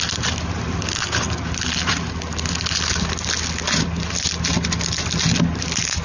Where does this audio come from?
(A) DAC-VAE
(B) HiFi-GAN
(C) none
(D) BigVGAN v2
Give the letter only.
C